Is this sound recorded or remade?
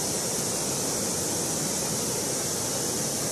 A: recorded